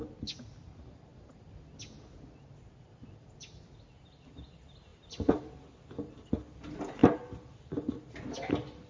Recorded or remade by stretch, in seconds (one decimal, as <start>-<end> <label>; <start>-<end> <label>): 0.0-8.9 recorded